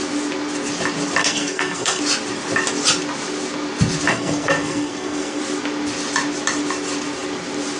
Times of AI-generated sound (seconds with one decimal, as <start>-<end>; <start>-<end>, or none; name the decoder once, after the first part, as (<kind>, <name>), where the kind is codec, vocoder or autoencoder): 1.2-2.0 (codec, SNAC); 4.1-5.4